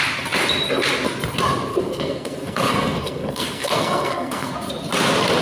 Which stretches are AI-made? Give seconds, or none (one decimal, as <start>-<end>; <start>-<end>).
1.7-4.5